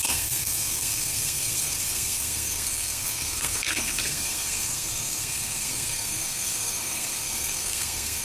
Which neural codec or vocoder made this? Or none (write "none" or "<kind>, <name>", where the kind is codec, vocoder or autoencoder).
codec, SNAC